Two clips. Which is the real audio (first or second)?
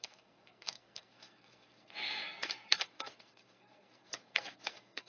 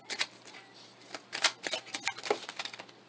second